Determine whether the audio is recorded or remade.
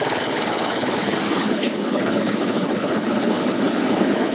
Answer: remade